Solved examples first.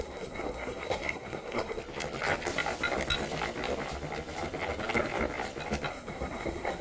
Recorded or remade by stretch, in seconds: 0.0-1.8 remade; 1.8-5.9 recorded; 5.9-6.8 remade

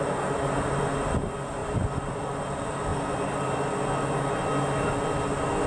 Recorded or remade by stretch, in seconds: 0.0-1.6 recorded; 1.6-2.4 remade; 2.4-5.7 recorded

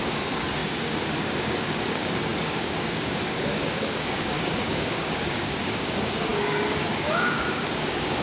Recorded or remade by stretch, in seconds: 0.0-8.2 remade

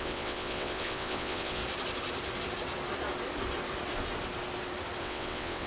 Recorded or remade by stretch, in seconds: 0.0-1.6 remade; 1.6-5.0 recorded; 5.0-5.7 remade